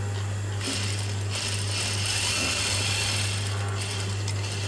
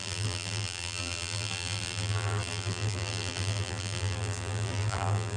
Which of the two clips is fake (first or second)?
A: second